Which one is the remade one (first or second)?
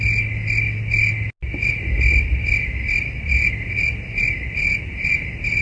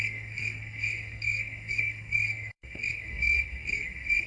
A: second